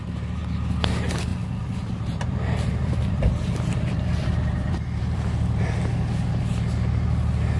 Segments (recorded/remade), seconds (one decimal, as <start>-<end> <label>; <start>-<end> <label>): 0.0-1.3 recorded; 1.3-5.6 remade; 5.6-7.6 recorded